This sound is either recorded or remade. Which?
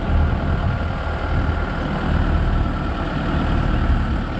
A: recorded